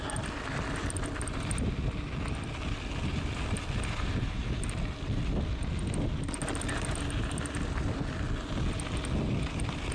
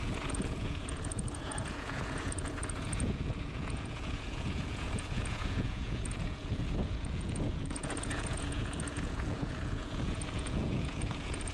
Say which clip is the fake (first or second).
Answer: second